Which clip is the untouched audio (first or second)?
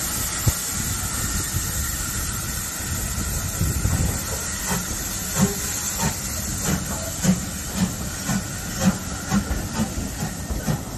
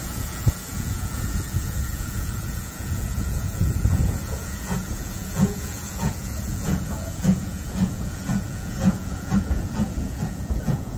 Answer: first